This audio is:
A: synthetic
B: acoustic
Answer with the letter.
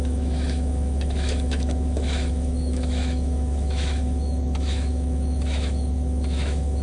A